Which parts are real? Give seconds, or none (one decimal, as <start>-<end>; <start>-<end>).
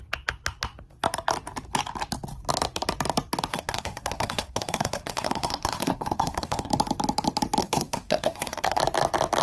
0.0-3.5; 6.7-7.6; 8.8-9.4